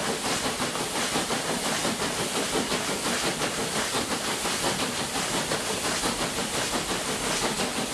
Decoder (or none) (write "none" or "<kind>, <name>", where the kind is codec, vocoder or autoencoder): vocoder, BigVGAN v2